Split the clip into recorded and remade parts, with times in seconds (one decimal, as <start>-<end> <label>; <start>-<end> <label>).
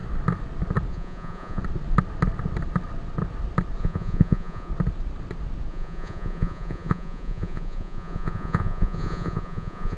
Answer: 0.0-0.9 recorded; 0.9-1.6 remade; 1.6-3.8 recorded; 3.8-4.7 remade; 4.7-5.7 recorded; 5.7-10.0 remade